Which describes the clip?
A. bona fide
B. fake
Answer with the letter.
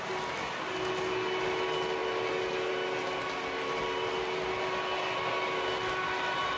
A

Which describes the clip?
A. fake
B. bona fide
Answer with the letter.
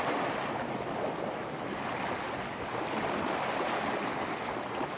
B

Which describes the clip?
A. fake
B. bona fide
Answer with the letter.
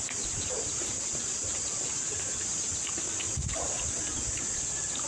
B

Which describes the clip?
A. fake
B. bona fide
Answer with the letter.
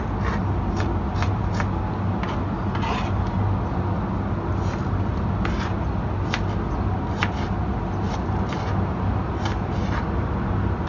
B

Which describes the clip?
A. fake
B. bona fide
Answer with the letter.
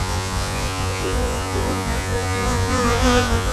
A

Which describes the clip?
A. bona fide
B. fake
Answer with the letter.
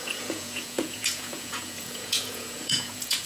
B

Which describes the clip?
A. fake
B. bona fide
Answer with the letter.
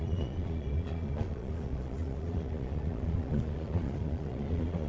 A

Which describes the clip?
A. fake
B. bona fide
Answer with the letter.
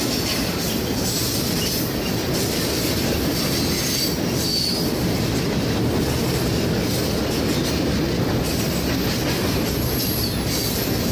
B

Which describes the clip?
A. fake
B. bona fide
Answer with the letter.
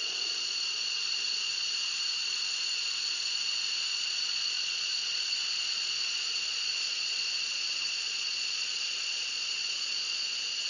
A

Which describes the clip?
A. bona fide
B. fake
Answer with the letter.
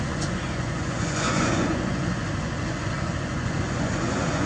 B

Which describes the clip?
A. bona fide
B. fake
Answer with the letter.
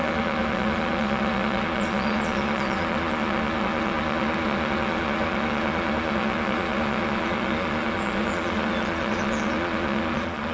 B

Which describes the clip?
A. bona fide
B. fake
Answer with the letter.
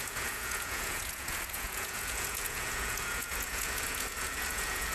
B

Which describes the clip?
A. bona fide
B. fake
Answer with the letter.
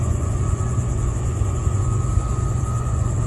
B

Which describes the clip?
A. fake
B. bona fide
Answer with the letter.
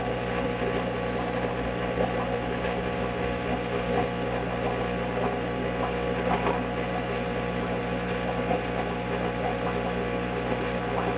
B